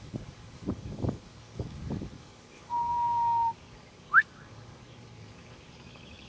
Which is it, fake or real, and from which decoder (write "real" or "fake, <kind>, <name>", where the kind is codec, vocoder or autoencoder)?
fake, codec, DAC